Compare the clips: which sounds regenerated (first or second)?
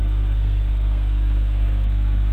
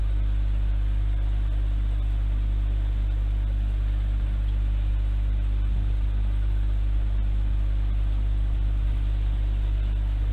first